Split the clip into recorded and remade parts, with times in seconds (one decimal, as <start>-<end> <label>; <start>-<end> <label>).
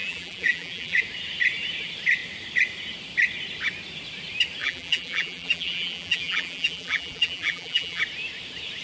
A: 0.0-1.0 remade; 1.0-4.6 recorded; 4.6-8.0 remade; 8.0-8.8 recorded